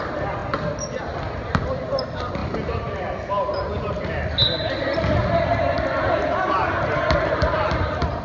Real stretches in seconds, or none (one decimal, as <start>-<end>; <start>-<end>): 0.0-8.2